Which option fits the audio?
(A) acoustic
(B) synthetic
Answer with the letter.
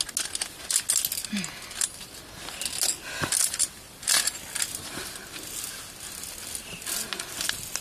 A